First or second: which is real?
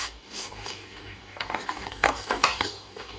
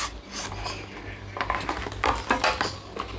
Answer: second